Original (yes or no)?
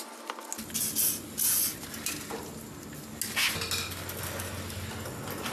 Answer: yes